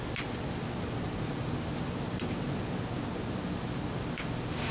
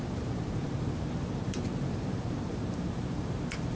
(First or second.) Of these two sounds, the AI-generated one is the second